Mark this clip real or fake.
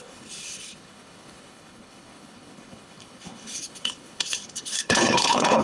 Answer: fake